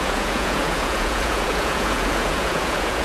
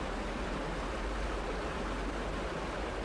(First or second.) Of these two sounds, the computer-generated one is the first